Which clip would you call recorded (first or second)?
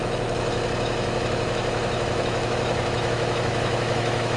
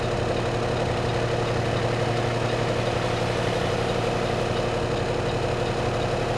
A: second